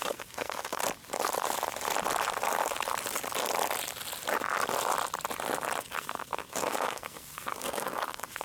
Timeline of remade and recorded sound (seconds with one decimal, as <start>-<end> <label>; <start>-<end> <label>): 0.0-0.8 remade; 0.8-5.8 recorded; 5.8-8.4 remade